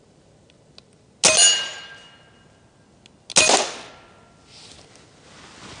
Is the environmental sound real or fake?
real